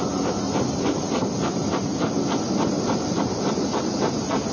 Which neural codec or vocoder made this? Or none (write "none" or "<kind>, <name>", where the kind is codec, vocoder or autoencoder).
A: none